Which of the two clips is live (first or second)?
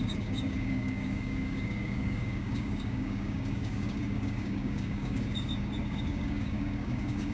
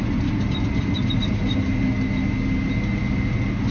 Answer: second